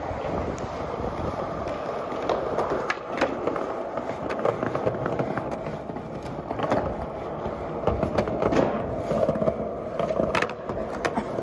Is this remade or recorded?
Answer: recorded